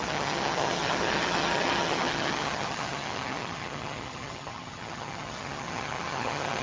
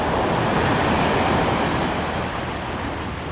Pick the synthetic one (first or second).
first